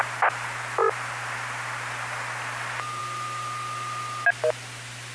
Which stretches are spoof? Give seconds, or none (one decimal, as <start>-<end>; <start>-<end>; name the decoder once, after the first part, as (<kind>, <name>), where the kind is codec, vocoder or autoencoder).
none